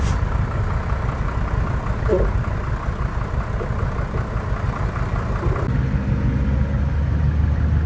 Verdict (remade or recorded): recorded